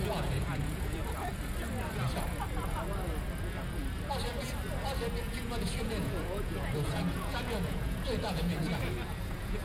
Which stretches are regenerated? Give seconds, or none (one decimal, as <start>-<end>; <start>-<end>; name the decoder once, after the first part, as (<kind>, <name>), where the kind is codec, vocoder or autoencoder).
0.0-1.0 (vocoder, Vocos); 5.2-8.7; 9.2-9.6